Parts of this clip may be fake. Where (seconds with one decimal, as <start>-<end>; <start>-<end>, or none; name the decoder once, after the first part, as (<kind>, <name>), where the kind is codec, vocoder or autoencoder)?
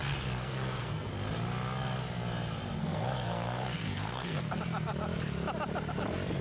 0.0-1.1 (codec, SNAC); 2.8-4.6